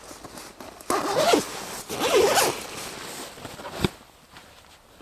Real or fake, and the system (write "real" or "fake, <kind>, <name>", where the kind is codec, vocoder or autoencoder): real